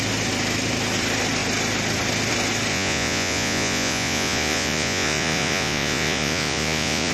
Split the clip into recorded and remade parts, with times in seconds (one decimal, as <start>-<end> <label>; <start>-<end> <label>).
0.0-2.7 recorded; 2.7-7.1 remade